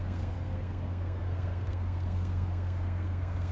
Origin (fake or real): fake